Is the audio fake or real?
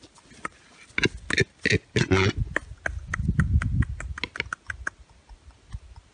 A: real